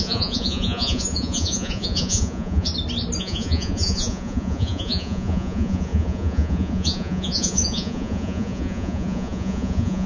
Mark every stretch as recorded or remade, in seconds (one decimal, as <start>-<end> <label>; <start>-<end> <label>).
0.0-2.7 remade; 2.7-3.2 recorded; 3.2-10.1 remade